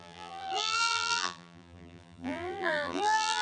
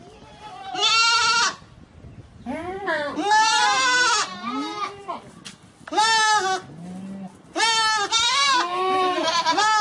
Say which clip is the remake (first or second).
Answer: first